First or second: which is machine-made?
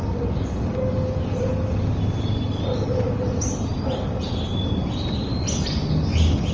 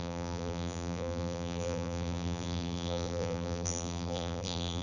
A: second